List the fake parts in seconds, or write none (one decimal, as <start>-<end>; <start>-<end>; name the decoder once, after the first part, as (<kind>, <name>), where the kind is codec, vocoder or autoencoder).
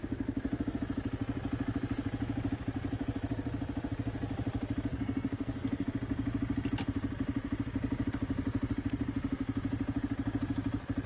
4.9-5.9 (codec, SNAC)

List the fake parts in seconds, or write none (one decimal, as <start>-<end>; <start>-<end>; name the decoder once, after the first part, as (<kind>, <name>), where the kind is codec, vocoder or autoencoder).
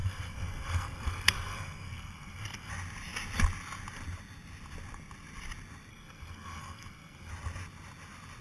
0.0-2.7 (codec, SNAC); 5.9-7.3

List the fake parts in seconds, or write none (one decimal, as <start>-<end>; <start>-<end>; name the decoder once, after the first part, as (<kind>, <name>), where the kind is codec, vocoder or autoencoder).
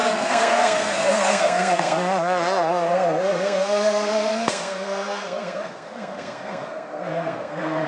0.0-7.9 (codec, SNAC)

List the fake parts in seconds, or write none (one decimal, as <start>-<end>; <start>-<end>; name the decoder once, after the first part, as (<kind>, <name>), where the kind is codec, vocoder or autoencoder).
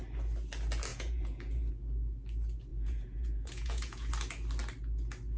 0.9-1.7 (vocoder, Vocos); 2.7-4.1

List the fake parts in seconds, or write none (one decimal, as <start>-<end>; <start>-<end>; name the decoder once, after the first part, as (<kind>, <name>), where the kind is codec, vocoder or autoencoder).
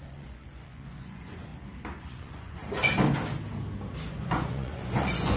0.0-1.5 (vocoder, Vocos); 2.0-2.6; 4.1-5.4